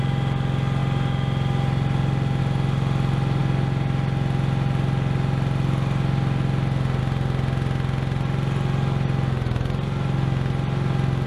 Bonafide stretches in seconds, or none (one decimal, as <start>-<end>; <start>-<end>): 0.0-11.3